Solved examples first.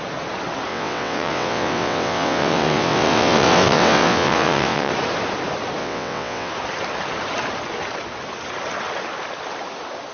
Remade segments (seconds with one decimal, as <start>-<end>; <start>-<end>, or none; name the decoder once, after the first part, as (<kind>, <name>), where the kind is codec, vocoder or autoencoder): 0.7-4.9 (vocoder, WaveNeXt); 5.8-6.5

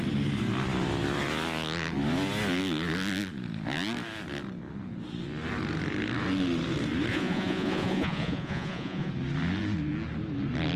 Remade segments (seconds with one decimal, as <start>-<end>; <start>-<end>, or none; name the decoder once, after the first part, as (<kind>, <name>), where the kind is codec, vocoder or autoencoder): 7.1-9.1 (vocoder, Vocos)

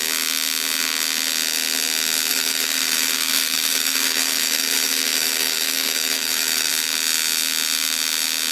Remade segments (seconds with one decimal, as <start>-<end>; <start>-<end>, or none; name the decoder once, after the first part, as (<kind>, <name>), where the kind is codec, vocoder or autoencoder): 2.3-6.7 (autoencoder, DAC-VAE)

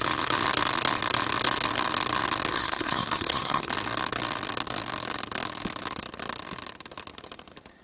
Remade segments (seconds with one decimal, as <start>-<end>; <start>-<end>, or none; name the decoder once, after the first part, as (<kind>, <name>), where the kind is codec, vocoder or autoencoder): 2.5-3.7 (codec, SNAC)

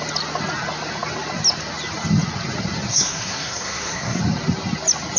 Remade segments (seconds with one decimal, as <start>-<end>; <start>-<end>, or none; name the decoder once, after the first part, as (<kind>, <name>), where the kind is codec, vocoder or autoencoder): 2.9-4.2 (codec, SNAC)

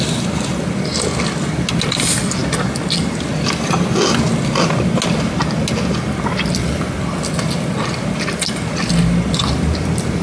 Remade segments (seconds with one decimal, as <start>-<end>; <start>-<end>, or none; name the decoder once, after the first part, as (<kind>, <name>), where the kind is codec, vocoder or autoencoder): none